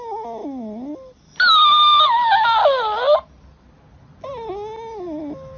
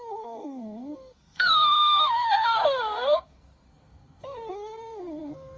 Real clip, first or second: first